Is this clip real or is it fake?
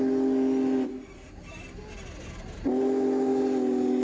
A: real